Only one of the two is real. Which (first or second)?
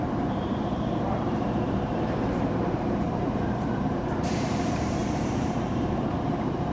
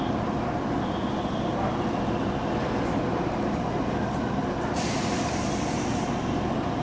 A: second